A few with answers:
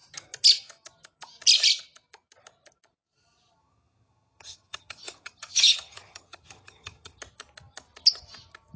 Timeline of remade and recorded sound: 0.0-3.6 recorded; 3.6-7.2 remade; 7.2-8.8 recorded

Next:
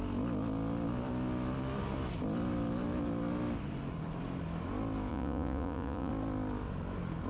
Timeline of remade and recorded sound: 0.0-5.1 recorded; 5.1-6.1 remade; 6.1-7.3 recorded

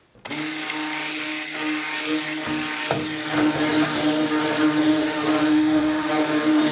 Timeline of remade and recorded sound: 0.0-4.9 recorded; 4.9-6.1 remade; 6.1-6.7 recorded

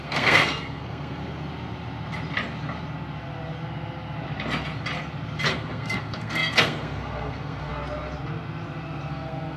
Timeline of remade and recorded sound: 0.0-1.2 remade; 1.2-5.5 recorded; 5.5-7.7 remade; 7.7-9.1 recorded; 9.1-9.6 remade

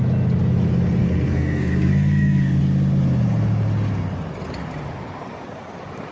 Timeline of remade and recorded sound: 0.0-1.0 recorded; 1.0-2.6 remade; 2.6-6.1 recorded